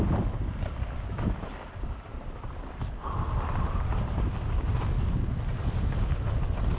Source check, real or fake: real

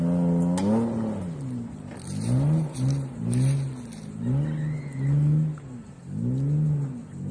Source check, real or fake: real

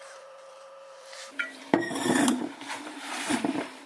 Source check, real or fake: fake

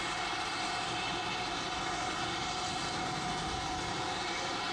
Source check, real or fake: real